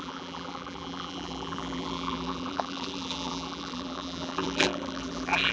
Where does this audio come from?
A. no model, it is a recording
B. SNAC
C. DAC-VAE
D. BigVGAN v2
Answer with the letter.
D